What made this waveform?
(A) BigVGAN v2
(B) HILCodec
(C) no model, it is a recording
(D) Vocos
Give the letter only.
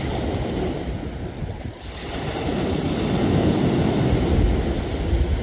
C